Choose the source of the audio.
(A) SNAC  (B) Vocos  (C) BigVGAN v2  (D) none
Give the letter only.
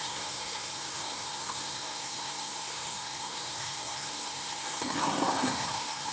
A